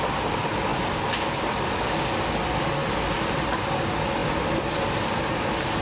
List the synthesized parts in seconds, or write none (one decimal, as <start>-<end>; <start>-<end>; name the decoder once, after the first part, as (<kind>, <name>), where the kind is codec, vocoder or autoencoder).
none